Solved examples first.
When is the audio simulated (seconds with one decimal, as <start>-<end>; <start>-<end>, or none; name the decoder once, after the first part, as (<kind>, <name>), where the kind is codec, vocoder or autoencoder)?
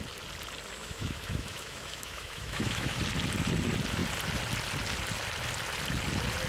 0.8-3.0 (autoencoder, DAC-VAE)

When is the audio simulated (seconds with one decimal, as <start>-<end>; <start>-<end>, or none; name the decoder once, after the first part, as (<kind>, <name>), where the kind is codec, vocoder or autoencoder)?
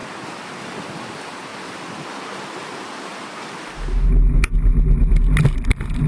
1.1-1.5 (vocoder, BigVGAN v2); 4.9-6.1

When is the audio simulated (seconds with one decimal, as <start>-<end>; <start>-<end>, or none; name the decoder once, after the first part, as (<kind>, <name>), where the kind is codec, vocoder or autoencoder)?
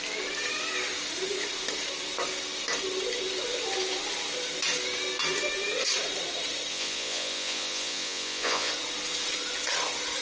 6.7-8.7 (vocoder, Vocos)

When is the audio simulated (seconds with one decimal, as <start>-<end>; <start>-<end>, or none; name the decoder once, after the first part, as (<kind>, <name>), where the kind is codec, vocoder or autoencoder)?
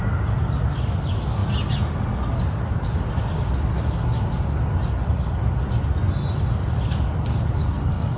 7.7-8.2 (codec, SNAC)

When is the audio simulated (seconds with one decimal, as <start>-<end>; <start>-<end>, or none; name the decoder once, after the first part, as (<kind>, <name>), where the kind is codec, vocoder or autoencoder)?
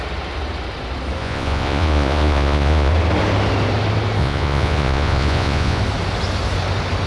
1.2-2.9 (vocoder, Vocos); 4.2-5.8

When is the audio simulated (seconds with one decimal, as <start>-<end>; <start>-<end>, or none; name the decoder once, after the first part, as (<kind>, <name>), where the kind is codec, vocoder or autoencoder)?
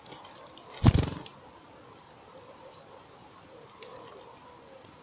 none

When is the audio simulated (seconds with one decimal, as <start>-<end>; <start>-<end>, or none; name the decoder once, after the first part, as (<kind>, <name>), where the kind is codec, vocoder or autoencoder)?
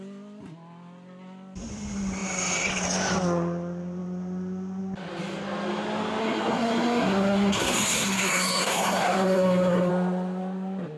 6.2-9.9 (codec, SNAC)